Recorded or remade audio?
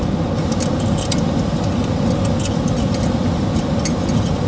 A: recorded